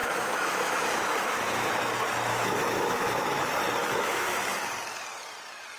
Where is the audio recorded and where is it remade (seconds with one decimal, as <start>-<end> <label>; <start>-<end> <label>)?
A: 0.0-1.7 remade; 1.7-2.3 recorded; 2.3-3.4 remade; 3.4-3.8 recorded; 3.8-4.7 remade; 4.7-5.8 recorded